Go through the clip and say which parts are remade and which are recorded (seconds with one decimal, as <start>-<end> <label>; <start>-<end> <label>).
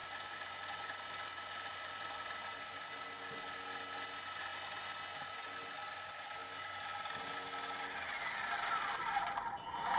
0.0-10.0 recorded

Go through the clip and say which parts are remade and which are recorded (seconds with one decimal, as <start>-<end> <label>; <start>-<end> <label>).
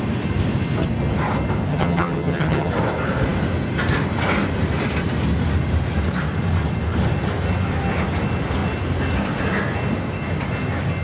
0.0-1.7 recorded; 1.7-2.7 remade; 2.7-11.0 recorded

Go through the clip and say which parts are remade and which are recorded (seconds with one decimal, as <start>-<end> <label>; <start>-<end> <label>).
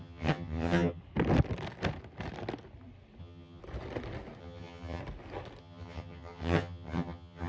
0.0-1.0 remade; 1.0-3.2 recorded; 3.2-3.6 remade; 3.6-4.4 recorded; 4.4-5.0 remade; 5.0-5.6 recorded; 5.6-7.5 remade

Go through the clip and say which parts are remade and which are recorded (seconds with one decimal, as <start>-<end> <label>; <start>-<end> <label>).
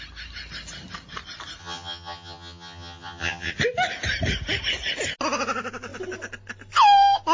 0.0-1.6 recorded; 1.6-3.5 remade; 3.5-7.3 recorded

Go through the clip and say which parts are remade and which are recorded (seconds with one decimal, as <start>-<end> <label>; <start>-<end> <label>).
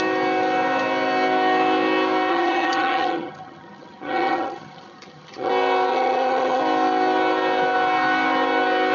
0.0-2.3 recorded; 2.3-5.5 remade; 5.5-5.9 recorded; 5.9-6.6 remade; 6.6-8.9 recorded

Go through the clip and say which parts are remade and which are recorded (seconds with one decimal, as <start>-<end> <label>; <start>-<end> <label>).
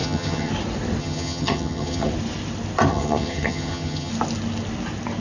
0.0-0.5 remade; 0.5-1.0 recorded; 1.0-2.1 remade; 2.1-2.9 recorded; 2.9-4.1 remade; 4.1-5.2 recorded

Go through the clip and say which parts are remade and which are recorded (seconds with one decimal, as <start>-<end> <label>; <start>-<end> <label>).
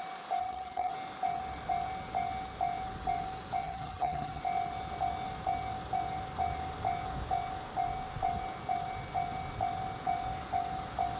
0.0-0.4 recorded; 0.4-0.9 remade; 0.9-3.6 recorded; 3.6-4.4 remade; 4.4-11.2 recorded